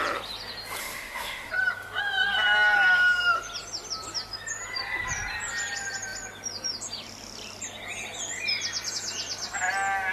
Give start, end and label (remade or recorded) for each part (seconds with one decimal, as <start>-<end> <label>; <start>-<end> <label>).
0.0-0.8 recorded; 0.8-1.5 remade; 1.5-10.1 recorded